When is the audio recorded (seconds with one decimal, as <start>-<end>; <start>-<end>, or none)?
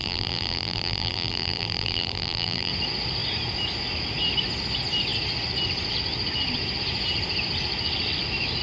2.7-8.6